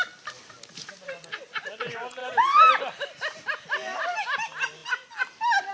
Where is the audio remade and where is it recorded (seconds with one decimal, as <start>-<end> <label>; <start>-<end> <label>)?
0.0-5.7 recorded